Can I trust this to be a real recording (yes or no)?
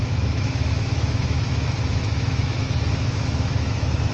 no